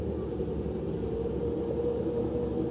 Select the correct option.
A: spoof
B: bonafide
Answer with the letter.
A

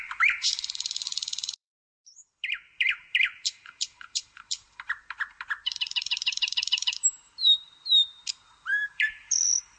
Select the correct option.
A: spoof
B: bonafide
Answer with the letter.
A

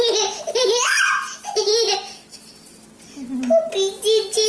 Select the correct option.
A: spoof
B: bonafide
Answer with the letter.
B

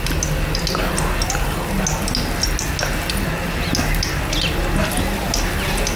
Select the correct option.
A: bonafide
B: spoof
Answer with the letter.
A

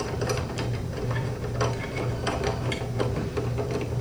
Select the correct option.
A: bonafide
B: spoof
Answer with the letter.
B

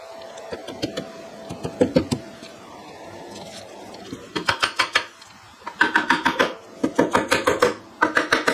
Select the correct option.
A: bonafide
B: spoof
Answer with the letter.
A